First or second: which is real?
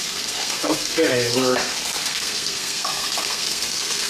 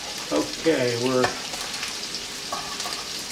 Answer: second